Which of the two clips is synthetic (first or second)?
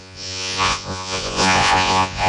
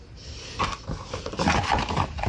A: first